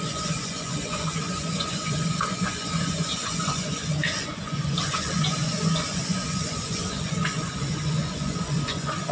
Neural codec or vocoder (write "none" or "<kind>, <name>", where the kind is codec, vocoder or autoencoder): vocoder, Vocos